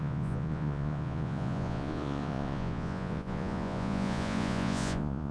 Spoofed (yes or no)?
yes